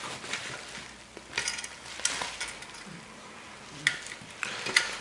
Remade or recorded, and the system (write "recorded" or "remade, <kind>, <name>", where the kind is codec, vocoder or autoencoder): recorded